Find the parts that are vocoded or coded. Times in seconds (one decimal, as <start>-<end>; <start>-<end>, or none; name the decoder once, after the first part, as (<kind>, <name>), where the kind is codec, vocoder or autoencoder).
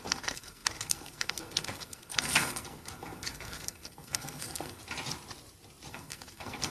0.0-4.8 (codec, SNAC); 5.9-6.7